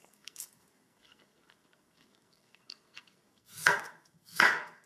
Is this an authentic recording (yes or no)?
no